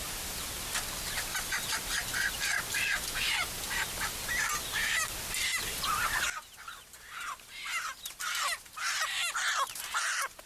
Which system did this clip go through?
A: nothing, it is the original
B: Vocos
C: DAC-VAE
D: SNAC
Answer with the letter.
A